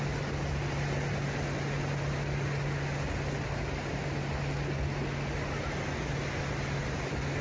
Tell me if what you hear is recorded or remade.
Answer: recorded